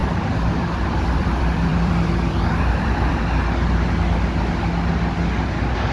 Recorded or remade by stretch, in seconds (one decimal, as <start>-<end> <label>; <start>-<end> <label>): 0.0-3.2 remade; 3.2-5.9 recorded